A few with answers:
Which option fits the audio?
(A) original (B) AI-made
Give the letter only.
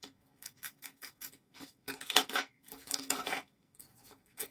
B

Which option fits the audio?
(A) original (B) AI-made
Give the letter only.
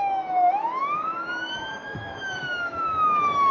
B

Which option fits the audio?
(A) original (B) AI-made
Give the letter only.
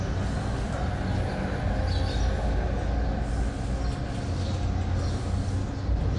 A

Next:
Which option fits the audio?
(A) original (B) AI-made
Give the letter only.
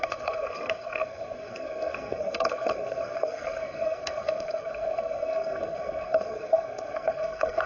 B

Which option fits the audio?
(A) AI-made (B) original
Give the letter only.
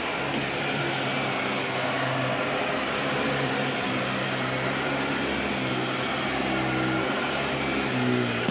B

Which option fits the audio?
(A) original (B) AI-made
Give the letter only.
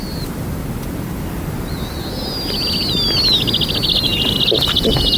A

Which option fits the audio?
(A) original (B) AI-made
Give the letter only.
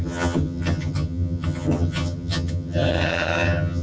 B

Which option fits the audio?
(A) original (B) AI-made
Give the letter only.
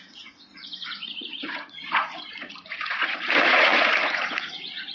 B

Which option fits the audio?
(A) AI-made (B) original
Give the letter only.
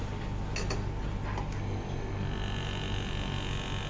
B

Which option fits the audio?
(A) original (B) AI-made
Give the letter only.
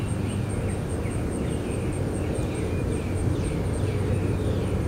A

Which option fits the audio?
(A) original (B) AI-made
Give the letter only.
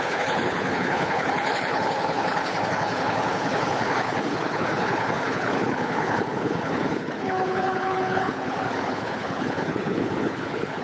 B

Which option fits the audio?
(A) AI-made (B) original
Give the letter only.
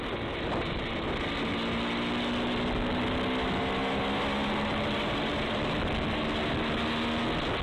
B